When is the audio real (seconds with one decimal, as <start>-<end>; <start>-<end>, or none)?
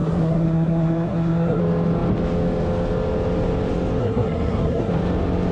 1.6-4.0; 4.9-5.5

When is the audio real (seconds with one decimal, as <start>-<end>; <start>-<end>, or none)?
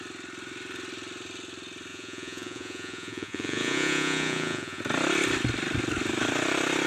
0.0-1.9; 4.8-6.9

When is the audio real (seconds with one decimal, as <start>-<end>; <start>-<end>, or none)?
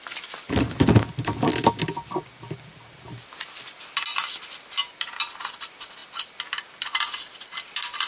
0.0-8.1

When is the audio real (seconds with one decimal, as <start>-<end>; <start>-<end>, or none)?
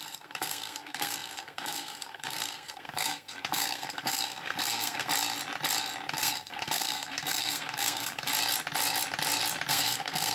5.1-6.1; 8.3-9.7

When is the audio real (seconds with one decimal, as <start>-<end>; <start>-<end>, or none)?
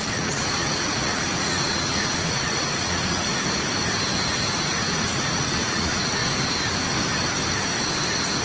3.3-4.5; 6.2-8.4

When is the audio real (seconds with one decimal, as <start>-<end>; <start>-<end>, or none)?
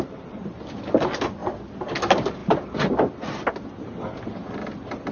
0.0-1.4; 2.0-2.4; 3.1-5.1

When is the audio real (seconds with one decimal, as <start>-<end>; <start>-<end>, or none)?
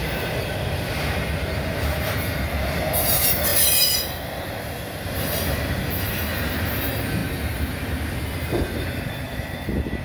0.0-3.5; 6.1-7.2; 7.7-10.0